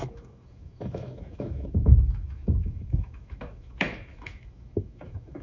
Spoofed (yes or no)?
yes